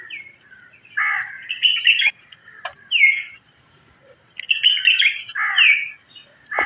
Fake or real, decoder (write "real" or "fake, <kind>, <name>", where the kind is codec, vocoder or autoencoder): real